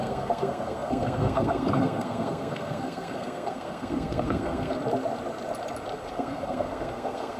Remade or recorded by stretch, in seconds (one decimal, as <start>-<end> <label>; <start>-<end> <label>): 0.0-4.8 remade; 4.8-6.1 recorded; 6.1-7.4 remade